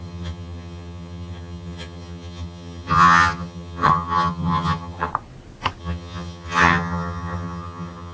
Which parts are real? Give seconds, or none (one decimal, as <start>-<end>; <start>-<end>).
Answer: 5.1-5.8